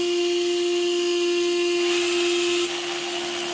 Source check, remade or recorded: recorded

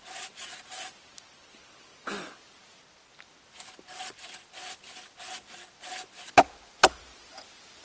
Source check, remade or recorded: recorded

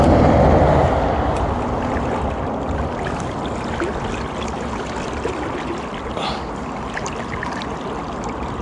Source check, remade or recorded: recorded